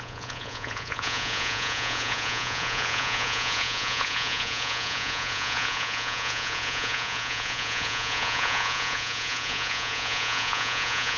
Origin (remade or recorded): remade